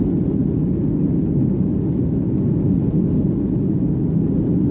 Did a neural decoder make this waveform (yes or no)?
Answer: no